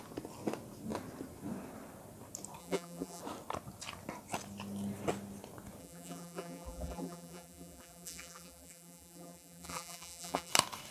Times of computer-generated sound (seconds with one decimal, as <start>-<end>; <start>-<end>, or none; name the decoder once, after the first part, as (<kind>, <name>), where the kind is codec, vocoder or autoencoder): 2.6-3.2 (vocoder, BigVGAN v2); 5.8-10.5